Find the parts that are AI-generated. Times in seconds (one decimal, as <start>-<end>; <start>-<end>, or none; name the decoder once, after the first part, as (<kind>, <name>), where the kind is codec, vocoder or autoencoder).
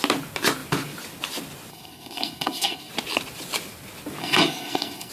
1.7-2.9 (codec, SNAC); 4.2-5.1